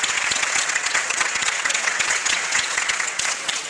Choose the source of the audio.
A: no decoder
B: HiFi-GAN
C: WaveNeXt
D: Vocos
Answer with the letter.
C